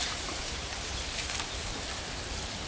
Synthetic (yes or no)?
yes